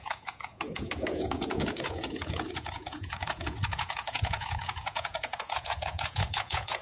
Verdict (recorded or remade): remade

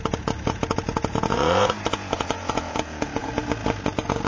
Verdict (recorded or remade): remade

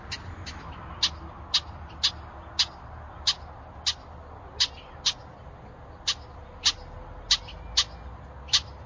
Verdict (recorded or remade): recorded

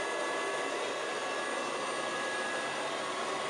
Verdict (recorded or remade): recorded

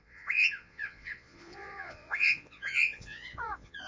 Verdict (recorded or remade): remade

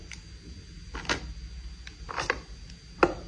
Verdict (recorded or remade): recorded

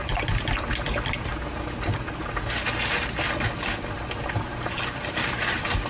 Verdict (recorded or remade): recorded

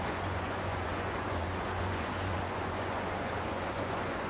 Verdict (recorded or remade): remade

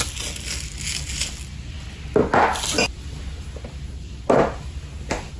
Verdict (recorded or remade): recorded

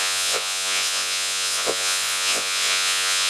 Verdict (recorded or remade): remade